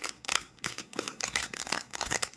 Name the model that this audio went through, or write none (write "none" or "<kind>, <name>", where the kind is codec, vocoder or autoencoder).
codec, SNAC